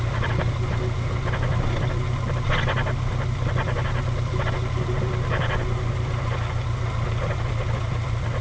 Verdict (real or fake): real